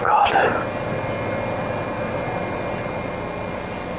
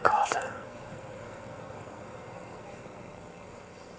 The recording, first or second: first